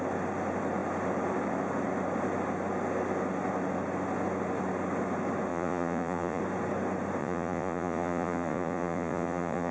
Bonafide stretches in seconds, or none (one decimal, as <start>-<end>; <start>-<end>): 0.0-5.5; 6.4-7.2